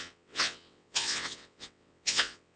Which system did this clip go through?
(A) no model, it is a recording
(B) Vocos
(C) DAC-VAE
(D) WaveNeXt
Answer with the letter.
D